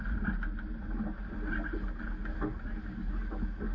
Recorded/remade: recorded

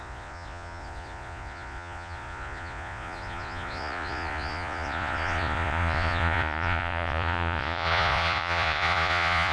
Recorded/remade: remade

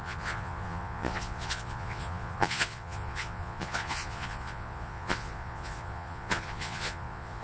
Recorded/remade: remade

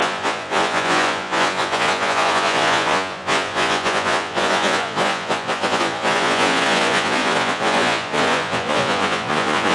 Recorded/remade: remade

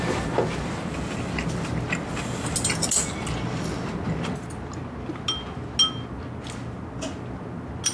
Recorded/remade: recorded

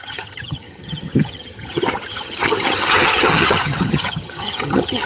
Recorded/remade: remade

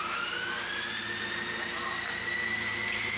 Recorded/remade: recorded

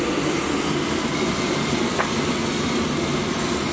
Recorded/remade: recorded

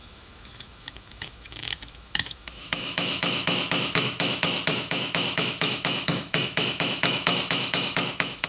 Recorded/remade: remade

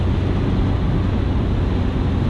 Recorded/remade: recorded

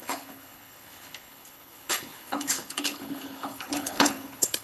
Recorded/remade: remade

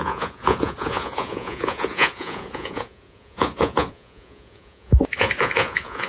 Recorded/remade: remade